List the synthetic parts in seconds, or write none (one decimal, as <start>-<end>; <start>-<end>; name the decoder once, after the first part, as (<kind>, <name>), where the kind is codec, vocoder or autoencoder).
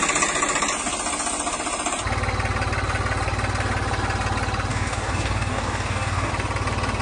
4.7-6.3 (codec, DAC)